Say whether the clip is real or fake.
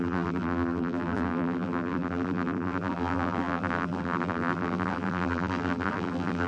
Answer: fake